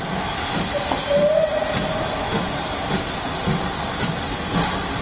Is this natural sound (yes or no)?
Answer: yes